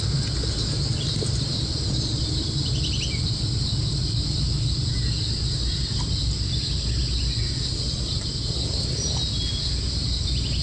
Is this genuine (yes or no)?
yes